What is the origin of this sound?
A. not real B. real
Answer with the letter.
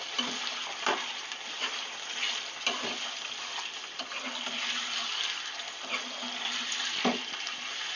B